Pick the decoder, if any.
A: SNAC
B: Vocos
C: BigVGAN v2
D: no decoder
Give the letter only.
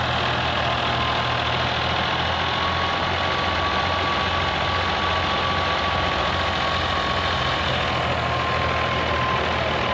D